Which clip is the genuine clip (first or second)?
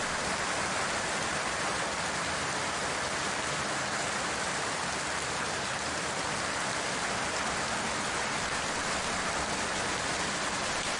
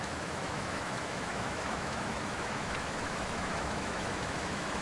first